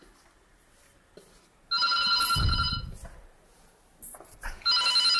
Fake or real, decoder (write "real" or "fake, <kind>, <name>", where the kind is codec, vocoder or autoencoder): real